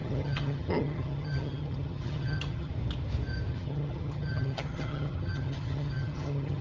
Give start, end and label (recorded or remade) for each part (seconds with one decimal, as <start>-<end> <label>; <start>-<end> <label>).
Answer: 0.0-2.7 remade; 2.7-3.5 recorded; 3.5-6.6 remade